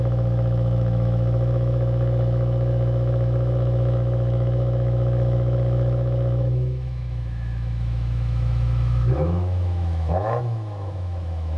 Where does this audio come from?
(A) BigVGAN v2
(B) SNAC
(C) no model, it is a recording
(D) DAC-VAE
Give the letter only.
D